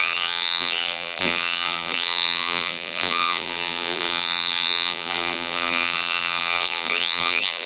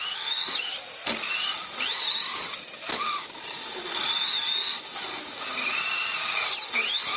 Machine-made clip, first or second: first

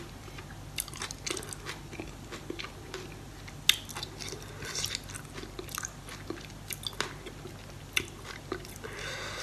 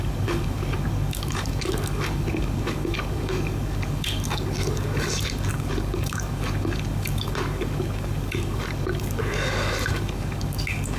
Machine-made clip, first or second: second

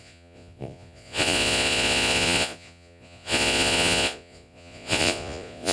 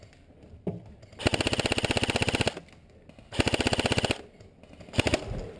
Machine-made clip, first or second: first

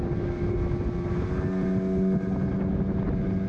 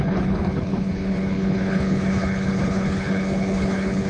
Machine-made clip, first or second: second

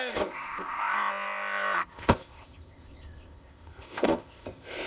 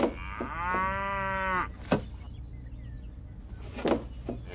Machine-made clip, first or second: first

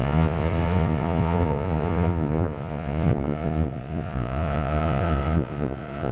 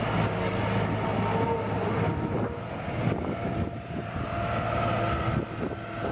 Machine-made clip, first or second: first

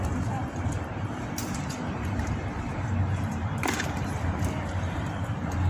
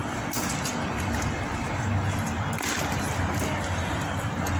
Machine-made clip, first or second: first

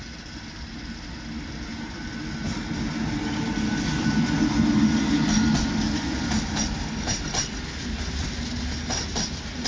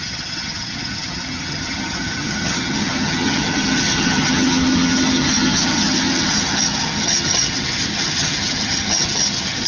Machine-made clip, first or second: second